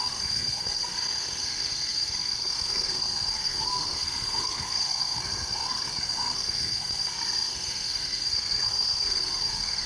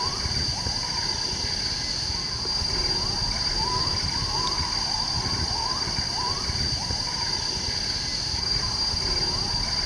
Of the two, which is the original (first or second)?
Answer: second